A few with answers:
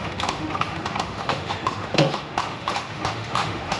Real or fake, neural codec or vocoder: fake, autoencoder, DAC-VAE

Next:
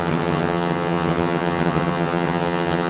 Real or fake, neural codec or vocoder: fake, vocoder, HiFi-GAN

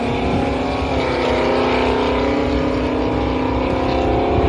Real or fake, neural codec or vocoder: real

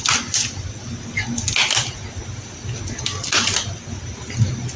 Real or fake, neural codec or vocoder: real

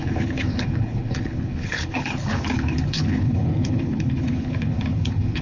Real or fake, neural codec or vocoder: fake, codec, HILCodec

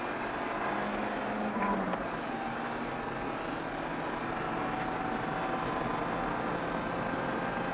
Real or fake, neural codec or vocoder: real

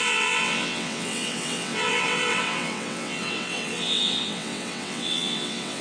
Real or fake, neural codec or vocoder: fake, vocoder, WaveNeXt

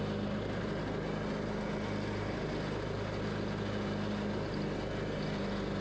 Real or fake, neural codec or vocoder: real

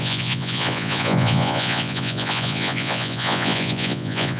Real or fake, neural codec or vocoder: fake, vocoder, Vocos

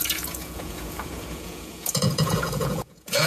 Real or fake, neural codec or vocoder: fake, vocoder, Vocos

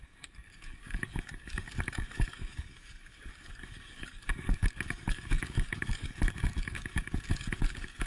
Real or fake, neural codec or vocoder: fake, codec, DAC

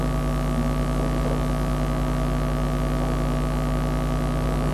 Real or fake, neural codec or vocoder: real